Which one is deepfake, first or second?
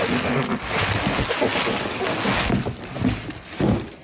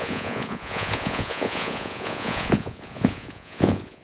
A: second